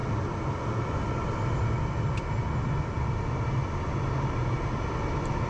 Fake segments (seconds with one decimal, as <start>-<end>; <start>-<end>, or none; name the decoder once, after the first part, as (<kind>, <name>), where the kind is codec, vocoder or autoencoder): none